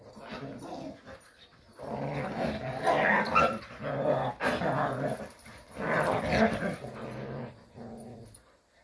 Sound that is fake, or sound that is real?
real